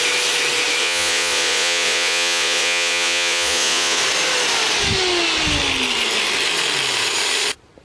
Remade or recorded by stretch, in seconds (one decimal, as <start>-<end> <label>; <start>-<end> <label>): 0.0-0.8 recorded; 0.8-4.0 remade; 4.0-7.8 recorded